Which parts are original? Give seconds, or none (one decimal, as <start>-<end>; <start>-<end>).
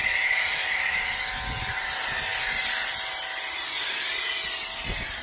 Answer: 1.2-5.2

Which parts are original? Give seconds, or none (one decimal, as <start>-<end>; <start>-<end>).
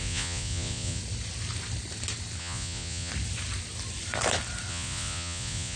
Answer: 1.0-2.4; 3.1-4.7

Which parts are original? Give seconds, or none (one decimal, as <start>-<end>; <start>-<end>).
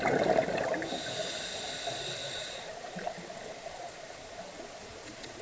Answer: 0.0-2.2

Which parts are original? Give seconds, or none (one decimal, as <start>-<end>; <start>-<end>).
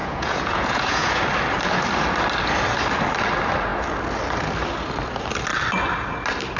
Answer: 1.2-6.6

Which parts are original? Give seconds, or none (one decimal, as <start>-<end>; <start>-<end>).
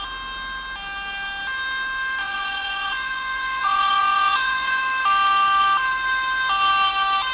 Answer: 0.0-2.2; 4.8-7.3